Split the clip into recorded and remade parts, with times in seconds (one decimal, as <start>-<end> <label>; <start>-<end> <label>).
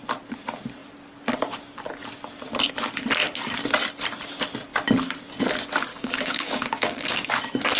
0.0-5.9 recorded; 5.9-7.3 remade; 7.3-7.8 recorded